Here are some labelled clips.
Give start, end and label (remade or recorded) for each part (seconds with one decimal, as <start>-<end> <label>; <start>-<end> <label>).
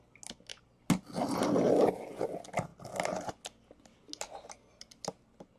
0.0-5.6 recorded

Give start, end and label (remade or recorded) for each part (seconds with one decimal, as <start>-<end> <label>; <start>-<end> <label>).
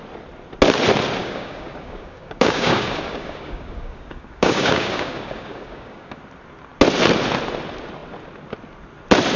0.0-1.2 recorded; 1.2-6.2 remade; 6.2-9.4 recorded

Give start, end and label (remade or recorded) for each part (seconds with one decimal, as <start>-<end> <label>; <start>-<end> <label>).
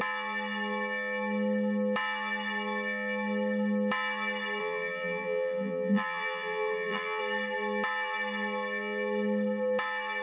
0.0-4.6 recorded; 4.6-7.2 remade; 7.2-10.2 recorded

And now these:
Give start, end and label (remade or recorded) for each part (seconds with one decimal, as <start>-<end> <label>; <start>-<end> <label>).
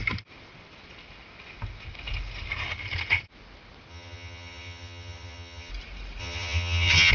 0.0-3.9 recorded; 3.9-5.7 remade; 5.7-6.2 recorded; 6.2-7.1 remade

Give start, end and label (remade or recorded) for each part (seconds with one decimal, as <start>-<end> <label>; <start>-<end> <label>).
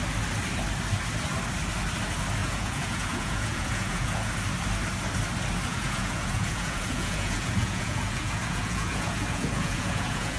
0.0-2.4 recorded; 2.4-4.3 remade; 4.3-5.7 recorded; 5.7-10.4 remade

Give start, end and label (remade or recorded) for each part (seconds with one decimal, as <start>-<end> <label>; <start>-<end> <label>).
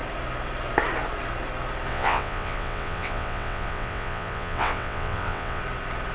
0.0-1.9 recorded; 1.9-5.6 remade; 5.6-6.1 recorded